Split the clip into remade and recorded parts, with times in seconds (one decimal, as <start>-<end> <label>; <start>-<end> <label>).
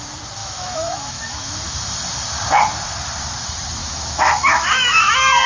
0.0-0.4 recorded; 0.4-1.6 remade; 1.6-3.8 recorded; 3.8-5.1 remade; 5.1-5.5 recorded